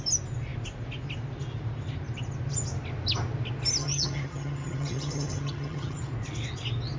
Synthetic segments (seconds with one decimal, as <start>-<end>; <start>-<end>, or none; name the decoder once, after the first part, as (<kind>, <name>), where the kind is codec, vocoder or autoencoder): 3.8-6.0 (vocoder, HiFi-GAN)